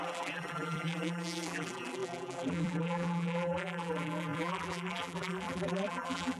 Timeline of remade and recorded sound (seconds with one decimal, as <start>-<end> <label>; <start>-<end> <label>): 0.0-6.4 remade